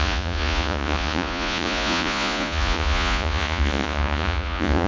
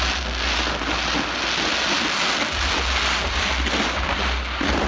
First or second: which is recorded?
second